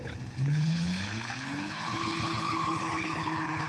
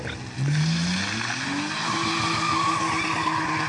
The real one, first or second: second